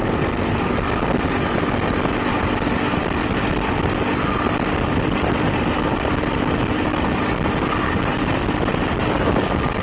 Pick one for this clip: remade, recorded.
recorded